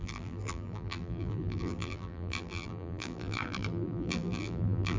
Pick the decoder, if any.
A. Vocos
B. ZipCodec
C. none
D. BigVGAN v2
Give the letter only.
D